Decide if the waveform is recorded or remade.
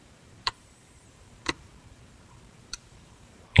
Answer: remade